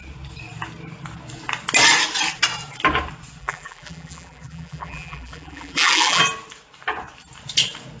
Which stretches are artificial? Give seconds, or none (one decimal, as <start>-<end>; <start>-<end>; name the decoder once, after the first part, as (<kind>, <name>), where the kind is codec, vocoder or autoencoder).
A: 3.4-6.2 (vocoder, BigVGAN v2)